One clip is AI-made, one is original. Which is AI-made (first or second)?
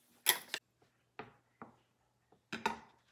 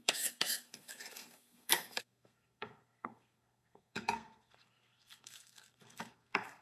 second